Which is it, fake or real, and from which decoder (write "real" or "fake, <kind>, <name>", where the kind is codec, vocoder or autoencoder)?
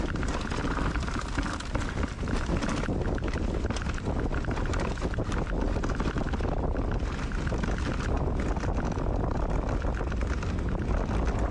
real